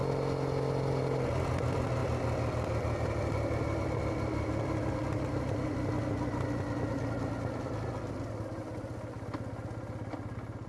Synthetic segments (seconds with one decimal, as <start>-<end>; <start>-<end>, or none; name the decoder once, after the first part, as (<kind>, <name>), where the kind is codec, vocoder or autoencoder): none